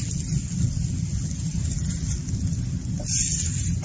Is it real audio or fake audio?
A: real